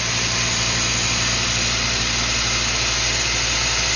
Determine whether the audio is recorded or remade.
recorded